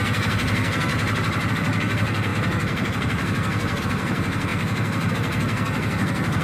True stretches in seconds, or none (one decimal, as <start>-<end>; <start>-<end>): 0.9-1.5